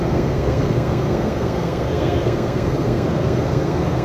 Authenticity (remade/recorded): remade